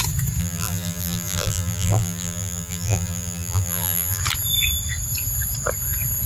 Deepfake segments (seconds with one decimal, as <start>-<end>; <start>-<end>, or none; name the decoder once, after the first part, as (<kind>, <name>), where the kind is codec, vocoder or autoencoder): 0.4-4.2 (vocoder, BigVGAN v2)